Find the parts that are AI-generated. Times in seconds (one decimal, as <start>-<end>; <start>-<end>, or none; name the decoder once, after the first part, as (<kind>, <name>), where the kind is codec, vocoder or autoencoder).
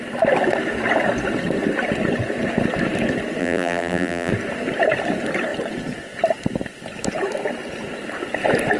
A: 3.4-4.3 (vocoder, BigVGAN v2)